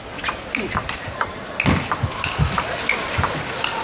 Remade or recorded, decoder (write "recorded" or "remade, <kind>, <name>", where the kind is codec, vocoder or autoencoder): remade, vocoder, BigVGAN v2